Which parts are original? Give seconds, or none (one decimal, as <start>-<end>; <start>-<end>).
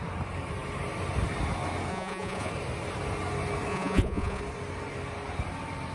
0.0-1.9; 2.5-3.7; 4.4-5.9